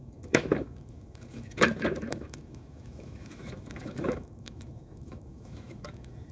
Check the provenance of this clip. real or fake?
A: fake